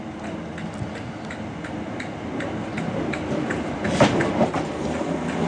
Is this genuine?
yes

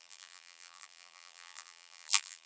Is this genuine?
no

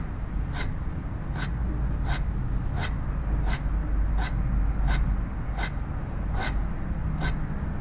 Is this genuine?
yes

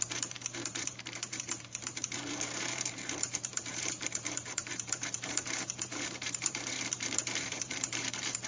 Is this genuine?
no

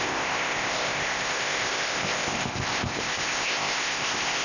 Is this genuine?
no